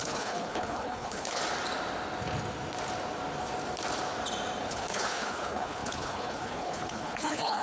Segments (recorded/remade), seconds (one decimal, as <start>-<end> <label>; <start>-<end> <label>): 0.0-1.4 remade; 1.4-4.6 recorded; 4.6-7.6 remade